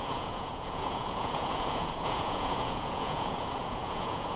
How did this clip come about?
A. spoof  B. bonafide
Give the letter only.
A